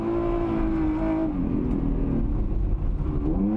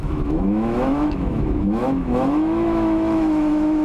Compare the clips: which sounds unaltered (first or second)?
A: first